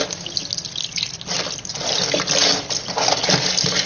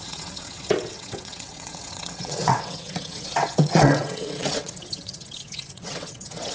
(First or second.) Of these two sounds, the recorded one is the first